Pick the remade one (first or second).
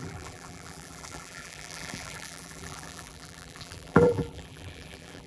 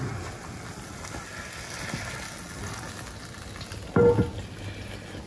first